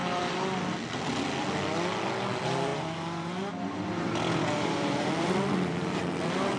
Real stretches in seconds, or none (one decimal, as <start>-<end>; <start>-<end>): 0.0-2.3; 2.7-4.6